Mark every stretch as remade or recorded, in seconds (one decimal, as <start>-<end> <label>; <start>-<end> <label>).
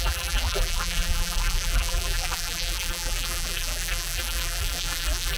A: 0.0-5.4 remade